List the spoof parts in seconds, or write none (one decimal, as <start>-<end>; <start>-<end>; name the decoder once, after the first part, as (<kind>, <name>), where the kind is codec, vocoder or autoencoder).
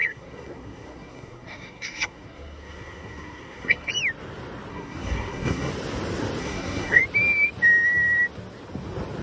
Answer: 0.0-3.9 (codec, SNAC); 4.7-5.7; 6.4-7.0